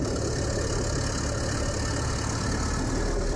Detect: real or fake real